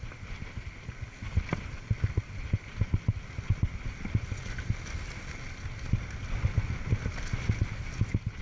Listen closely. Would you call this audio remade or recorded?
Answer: recorded